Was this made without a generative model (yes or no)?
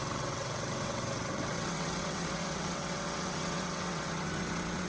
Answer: no